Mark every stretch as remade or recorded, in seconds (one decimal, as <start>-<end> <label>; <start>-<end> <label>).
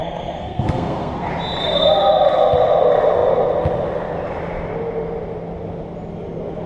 0.0-1.3 remade; 1.3-6.7 recorded